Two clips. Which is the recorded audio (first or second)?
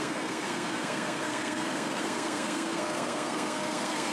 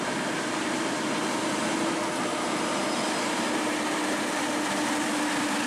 second